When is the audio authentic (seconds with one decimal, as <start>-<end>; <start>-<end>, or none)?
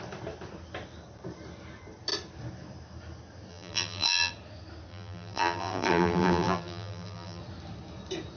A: 0.0-3.5; 4.3-4.9; 7.4-8.4